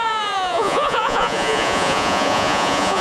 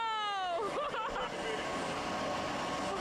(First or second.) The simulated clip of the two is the first